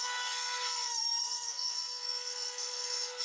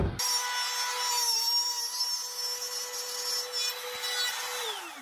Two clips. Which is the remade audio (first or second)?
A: first